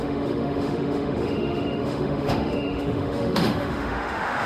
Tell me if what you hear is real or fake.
fake